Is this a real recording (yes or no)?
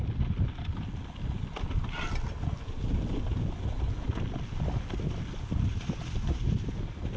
yes